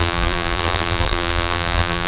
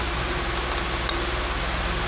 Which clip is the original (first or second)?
second